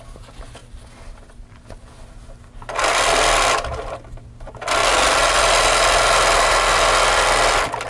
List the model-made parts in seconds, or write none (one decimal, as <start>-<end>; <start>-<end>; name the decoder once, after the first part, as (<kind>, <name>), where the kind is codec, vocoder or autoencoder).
none

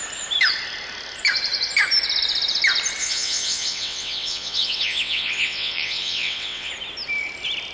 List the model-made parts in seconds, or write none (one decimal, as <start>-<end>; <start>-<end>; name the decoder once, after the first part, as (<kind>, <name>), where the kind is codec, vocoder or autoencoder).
3.0-6.7 (vocoder, WaveNeXt)

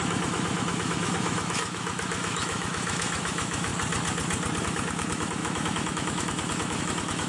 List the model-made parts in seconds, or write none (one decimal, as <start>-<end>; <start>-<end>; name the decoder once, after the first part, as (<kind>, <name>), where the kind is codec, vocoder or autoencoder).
0.0-3.7 (autoencoder, DAC-VAE); 4.6-7.3

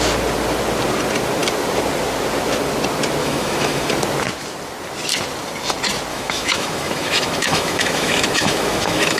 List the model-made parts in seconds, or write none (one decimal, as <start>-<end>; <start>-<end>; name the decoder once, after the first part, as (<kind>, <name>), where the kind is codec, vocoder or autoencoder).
3.2-3.9 (autoencoder, DAC-VAE); 6.1-9.2

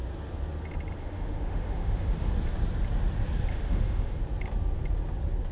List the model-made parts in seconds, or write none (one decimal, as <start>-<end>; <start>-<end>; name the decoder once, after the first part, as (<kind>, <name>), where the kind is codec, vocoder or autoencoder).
1.0-2.3 (autoencoder, DAC-VAE); 3.5-4.2

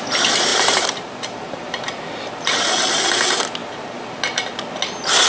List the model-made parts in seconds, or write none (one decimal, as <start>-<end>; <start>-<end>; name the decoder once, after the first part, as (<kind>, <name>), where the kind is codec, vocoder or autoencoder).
0.5-1.8 (vocoder, BigVGAN v2); 3.6-4.2

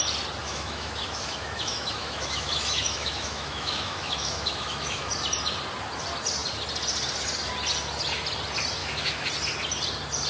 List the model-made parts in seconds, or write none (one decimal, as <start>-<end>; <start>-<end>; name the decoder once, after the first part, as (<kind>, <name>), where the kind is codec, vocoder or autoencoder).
0.4-5.1 (autoencoder, DAC-VAE); 8.8-9.3